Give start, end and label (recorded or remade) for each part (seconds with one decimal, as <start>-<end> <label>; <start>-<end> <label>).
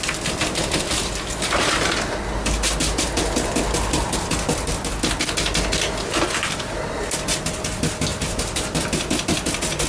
0.0-9.9 recorded